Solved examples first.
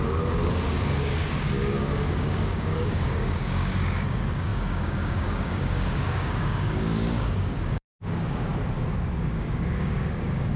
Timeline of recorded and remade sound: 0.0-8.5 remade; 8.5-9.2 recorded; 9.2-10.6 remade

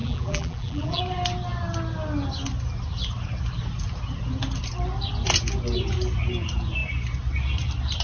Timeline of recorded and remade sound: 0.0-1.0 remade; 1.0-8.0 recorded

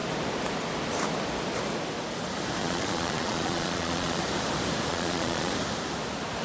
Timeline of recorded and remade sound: 0.0-2.6 recorded; 2.6-4.2 remade; 4.2-4.9 recorded; 4.9-5.5 remade; 5.5-6.4 recorded

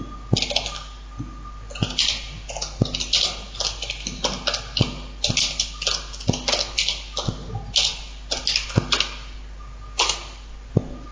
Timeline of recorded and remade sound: 0.0-11.1 recorded

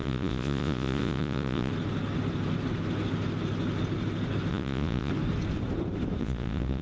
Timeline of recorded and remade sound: 0.0-1.7 remade; 1.7-4.5 recorded; 4.5-5.1 remade; 5.1-6.2 recorded; 6.2-6.8 remade

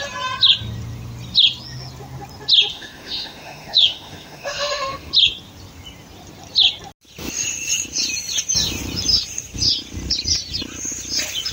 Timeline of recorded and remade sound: 0.0-2.7 recorded; 2.7-5.1 remade; 5.1-11.5 recorded

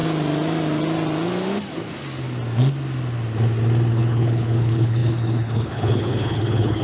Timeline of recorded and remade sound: 0.0-3.9 recorded; 3.9-6.8 remade